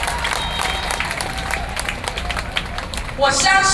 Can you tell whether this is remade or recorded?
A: remade